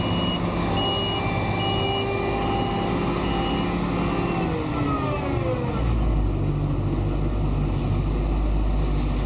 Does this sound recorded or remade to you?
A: recorded